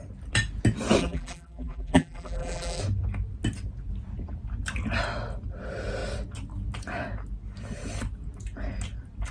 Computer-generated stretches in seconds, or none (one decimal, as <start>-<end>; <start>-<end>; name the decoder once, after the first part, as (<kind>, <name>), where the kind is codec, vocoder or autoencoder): 1.0-2.8 (vocoder, BigVGAN v2)